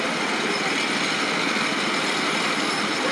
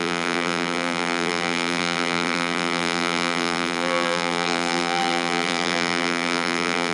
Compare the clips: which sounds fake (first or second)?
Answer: second